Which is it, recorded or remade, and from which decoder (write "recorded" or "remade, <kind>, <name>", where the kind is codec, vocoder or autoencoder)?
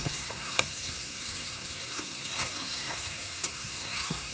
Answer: remade, codec, SNAC